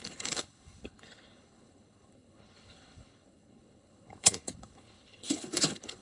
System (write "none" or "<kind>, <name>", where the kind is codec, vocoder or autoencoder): codec, HILCodec